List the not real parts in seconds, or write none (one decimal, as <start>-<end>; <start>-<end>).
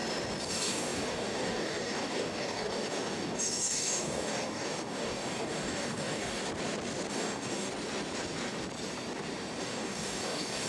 0.5-6.4; 7.1-7.7; 9.6-10.7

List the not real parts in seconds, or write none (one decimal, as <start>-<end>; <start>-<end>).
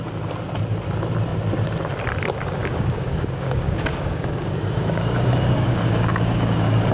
2.6-6.9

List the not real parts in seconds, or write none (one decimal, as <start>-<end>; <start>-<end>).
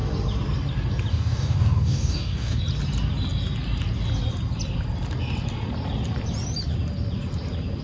1.1-2.6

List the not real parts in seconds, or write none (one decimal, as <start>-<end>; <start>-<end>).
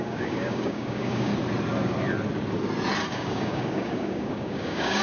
0.0-1.3; 3.1-5.0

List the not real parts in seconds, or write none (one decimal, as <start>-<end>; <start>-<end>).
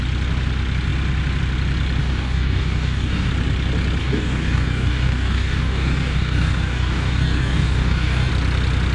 2.0-3.3; 4.0-8.3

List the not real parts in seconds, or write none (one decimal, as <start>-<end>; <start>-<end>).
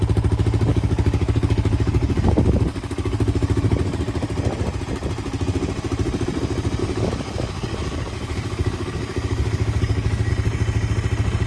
0.7-3.9; 6.8-10.3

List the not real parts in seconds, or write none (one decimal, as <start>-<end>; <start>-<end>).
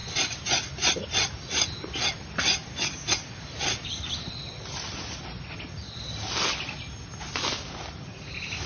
none